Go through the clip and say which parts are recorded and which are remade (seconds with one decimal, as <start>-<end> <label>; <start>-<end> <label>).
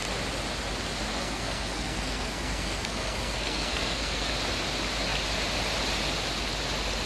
0.0-1.1 recorded; 1.1-4.3 remade; 4.3-7.1 recorded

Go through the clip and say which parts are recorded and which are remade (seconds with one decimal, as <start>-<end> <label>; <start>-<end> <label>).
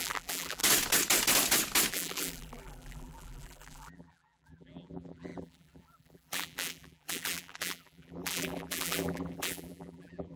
0.0-0.6 remade; 0.6-1.9 recorded; 1.9-10.4 remade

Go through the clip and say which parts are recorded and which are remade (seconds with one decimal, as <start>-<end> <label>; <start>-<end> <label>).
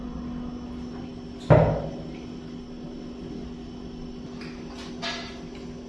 0.0-5.9 recorded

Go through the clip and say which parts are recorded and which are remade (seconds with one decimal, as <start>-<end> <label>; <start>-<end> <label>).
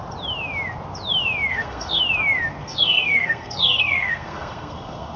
0.0-1.5 recorded; 1.5-2.0 remade; 2.0-2.6 recorded; 2.6-5.2 remade